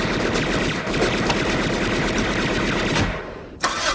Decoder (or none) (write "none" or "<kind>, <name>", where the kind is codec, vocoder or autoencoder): none